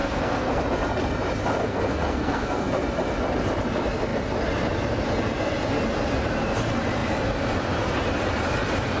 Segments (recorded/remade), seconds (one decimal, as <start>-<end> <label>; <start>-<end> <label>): 0.0-0.6 remade; 0.6-1.6 recorded; 1.6-2.7 remade; 2.7-9.0 recorded